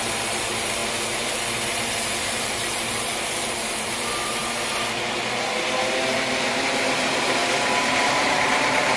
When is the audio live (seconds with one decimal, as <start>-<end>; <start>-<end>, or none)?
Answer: 0.8-1.7; 4.4-6.6; 7.4-7.9